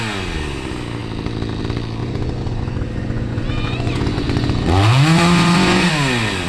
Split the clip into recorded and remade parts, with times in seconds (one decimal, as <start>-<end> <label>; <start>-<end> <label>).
0.0-2.0 recorded; 2.0-5.9 remade; 5.9-6.5 recorded